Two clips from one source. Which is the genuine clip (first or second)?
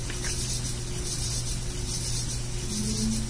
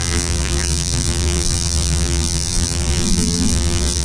first